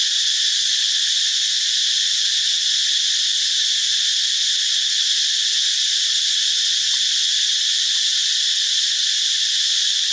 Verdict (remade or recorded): recorded